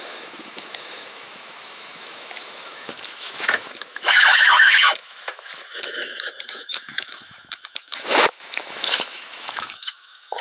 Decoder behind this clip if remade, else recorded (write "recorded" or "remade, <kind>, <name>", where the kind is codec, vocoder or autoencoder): remade, autoencoder, DAC-VAE